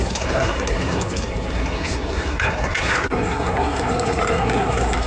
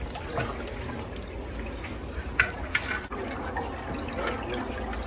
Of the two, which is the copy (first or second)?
first